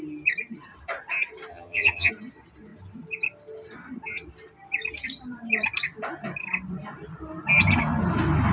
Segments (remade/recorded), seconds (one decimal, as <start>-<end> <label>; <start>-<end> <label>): 0.0-1.5 recorded; 1.5-2.1 remade; 2.1-8.5 recorded